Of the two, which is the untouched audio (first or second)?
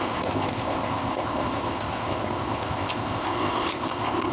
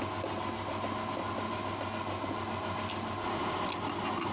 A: second